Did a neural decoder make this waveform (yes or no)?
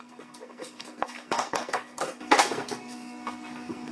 yes